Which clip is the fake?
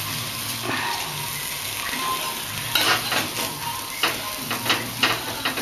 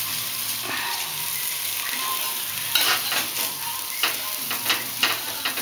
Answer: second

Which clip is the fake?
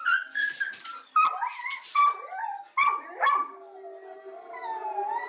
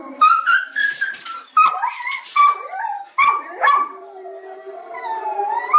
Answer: second